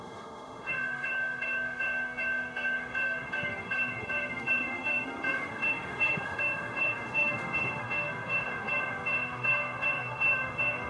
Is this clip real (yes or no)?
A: no